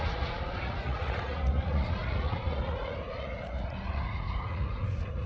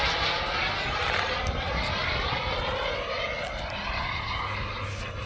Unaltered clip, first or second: second